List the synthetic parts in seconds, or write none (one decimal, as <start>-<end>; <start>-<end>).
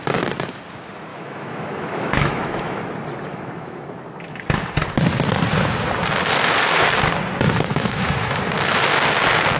1.1-2.8; 3.3-4.0; 7.7-8.4